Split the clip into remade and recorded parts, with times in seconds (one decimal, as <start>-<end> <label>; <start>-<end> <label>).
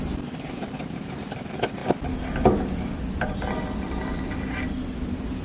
0.0-1.8 remade; 1.8-5.0 recorded; 5.0-5.4 remade